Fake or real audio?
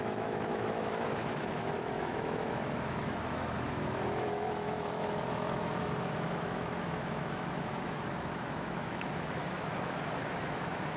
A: fake